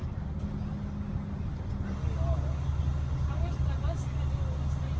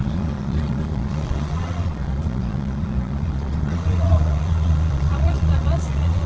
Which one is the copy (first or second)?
second